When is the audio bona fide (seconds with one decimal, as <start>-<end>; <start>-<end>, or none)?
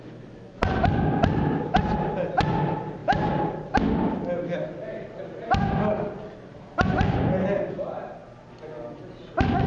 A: 0.0-9.7